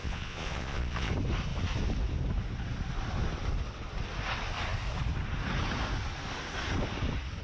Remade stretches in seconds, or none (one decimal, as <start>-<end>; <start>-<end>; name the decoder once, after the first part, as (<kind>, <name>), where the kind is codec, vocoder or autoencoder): 0.0-1.1 (vocoder, Vocos)